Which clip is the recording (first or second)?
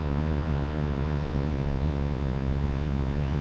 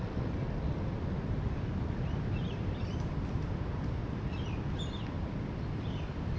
second